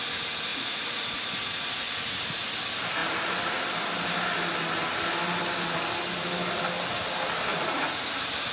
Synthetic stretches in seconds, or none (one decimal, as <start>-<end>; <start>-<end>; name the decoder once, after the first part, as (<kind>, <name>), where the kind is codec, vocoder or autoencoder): 0.5-1.3 (vocoder, Vocos); 7.5-8.0